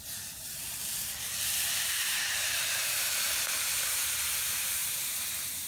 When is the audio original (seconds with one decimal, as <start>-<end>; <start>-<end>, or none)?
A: 4.8-5.7